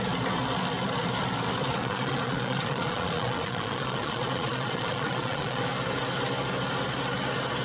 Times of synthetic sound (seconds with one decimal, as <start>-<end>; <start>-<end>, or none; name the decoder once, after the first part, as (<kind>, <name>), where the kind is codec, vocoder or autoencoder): 1.8-5.6 (vocoder, Vocos)